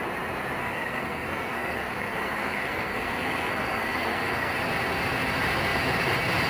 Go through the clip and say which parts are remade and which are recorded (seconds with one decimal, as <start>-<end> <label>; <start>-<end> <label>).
0.0-0.6 recorded; 0.6-4.5 remade; 4.5-6.5 recorded